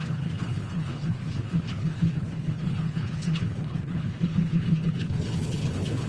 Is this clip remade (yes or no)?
yes